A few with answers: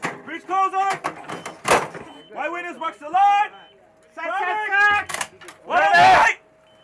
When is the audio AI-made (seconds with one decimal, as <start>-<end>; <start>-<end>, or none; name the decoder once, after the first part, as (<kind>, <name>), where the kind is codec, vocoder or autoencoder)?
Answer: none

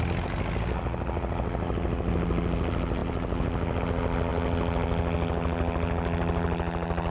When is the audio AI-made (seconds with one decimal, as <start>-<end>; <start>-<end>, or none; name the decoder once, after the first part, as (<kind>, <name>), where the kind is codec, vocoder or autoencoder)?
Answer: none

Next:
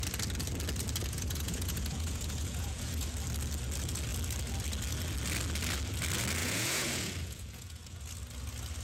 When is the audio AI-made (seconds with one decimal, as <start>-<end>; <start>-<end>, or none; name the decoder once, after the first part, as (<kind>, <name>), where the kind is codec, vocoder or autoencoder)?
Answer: 1.0-3.1 (vocoder, Vocos); 6.4-8.0

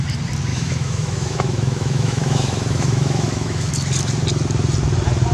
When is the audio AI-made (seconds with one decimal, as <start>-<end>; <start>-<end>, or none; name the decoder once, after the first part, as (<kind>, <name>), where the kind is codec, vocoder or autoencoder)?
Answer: 0.5-3.7 (autoencoder, DAC-VAE)

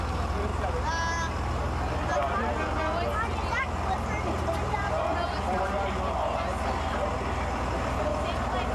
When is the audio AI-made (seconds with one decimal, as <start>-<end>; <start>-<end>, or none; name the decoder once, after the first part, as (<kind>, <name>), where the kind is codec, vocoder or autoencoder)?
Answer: none